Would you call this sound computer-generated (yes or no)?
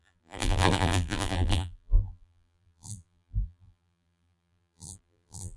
yes